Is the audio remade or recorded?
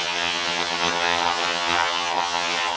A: remade